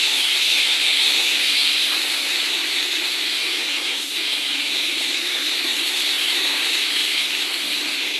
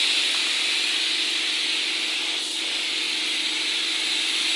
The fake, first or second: first